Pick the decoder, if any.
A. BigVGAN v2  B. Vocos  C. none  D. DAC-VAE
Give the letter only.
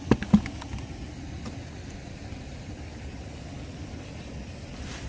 C